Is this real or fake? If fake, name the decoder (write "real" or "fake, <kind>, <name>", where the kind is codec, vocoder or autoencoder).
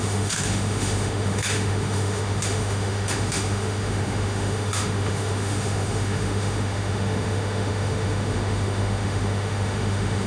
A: fake, autoencoder, DAC-VAE